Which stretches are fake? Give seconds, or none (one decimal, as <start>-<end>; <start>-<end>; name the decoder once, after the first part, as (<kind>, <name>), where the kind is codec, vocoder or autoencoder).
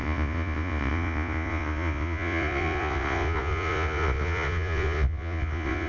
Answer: 0.0-5.9 (vocoder, Vocos)